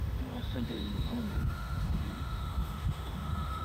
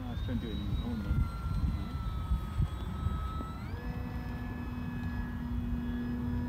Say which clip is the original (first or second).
second